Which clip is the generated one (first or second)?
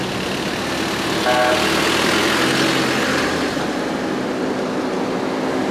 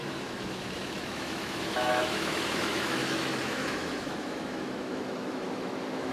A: second